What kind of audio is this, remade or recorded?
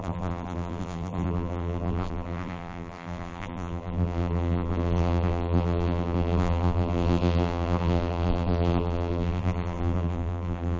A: remade